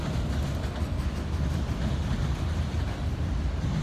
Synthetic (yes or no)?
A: no